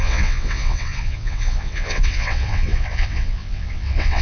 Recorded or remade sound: remade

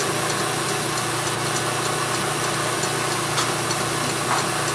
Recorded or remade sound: recorded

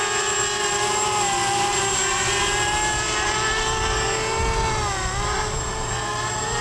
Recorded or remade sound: recorded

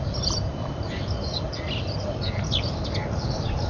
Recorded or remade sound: recorded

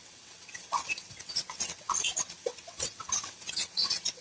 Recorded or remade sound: remade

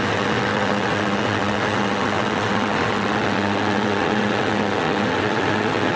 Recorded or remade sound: remade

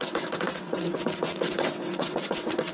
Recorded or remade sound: remade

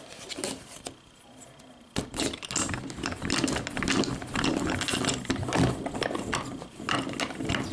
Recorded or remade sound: recorded